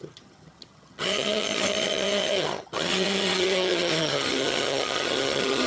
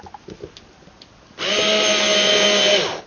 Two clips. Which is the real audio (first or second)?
second